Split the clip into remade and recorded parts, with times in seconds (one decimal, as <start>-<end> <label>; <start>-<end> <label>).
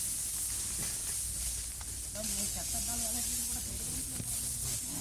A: 0.0-1.0 recorded; 1.0-3.8 remade; 3.8-5.0 recorded